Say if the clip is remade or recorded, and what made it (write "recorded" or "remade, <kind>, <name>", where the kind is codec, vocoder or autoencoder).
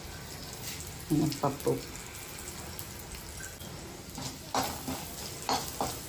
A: recorded